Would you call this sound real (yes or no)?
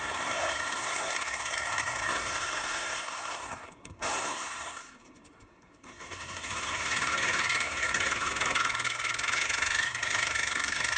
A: no